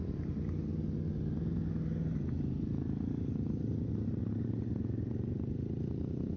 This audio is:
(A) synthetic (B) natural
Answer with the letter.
B